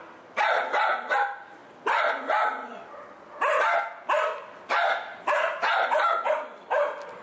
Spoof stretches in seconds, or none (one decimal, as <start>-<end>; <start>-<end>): none